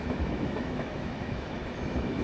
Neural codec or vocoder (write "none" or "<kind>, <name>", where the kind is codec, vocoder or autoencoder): autoencoder, DAC-VAE